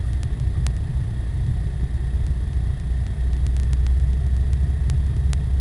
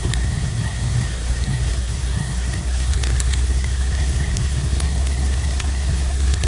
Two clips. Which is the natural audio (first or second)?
first